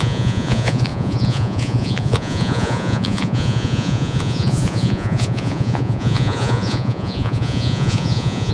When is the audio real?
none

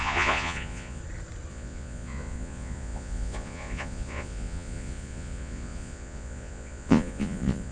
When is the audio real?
1.0-1.5

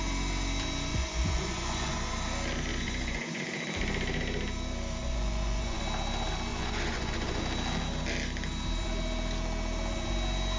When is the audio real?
0.0-0.9; 2.1-2.7; 3.4-5.0; 5.8-6.5; 7.4-10.6